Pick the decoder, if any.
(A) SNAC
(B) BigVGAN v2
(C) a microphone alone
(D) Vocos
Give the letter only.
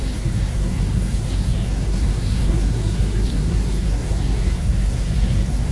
A